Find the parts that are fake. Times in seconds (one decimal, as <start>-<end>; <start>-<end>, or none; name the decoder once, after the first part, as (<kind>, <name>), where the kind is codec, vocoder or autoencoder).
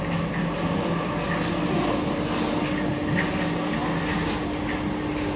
none